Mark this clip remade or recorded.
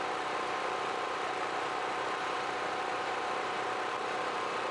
remade